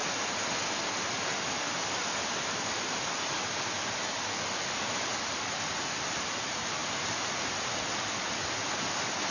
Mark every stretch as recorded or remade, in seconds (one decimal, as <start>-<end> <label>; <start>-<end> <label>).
0.0-9.3 recorded